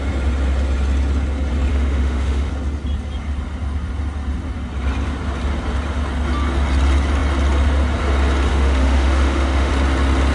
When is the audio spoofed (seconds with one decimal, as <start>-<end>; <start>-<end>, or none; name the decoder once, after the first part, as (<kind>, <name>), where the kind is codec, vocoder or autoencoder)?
1.7-2.5 (autoencoder, DAC-VAE); 8.5-9.7